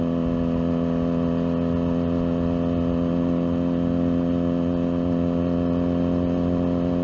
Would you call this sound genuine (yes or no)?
yes